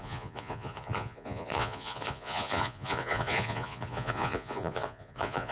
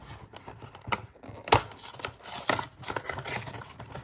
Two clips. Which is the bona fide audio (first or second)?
second